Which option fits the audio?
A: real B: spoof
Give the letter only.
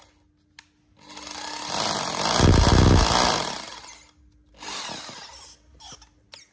A